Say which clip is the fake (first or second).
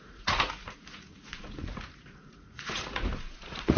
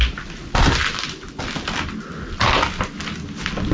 first